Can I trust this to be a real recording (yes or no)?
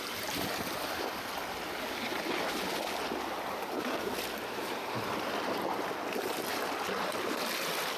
yes